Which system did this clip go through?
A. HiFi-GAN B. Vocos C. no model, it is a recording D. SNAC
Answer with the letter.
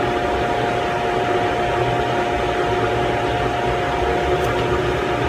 C